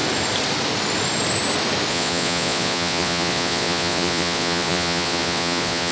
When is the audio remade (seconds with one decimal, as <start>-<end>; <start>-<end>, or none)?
1.9-5.9